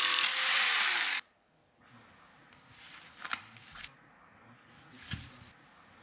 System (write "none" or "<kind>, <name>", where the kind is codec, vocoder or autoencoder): none